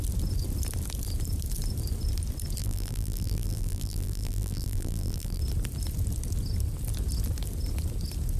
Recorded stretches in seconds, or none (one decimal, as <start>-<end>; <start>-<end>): 0.0-2.6; 5.4-8.4